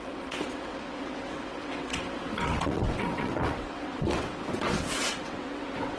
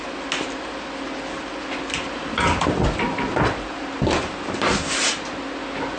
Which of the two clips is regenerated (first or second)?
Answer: first